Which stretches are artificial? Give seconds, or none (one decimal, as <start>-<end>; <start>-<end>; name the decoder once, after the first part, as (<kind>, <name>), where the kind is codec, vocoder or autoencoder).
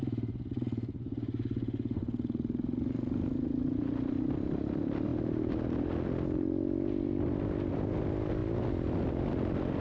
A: none